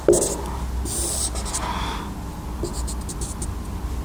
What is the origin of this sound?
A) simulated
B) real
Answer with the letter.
B